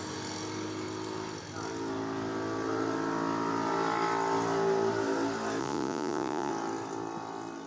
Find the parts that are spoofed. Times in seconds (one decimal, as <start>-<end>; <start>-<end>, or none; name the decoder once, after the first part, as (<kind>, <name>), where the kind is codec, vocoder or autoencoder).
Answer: 5.6-6.5 (vocoder, Vocos)